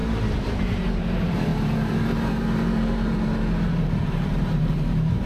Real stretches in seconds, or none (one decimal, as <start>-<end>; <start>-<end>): none